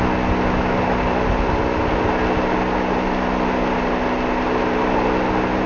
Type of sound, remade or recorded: recorded